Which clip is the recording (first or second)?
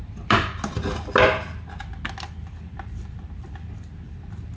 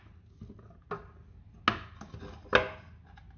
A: second